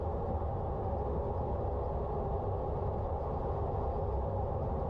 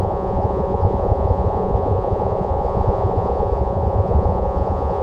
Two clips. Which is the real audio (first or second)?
first